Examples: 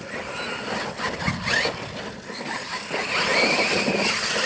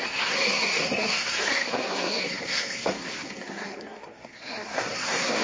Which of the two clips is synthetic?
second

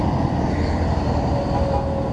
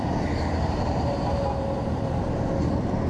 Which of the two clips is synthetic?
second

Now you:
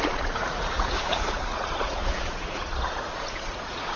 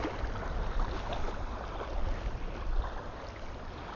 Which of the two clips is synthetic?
first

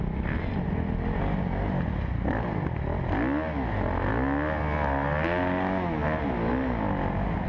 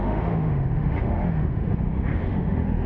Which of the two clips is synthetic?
second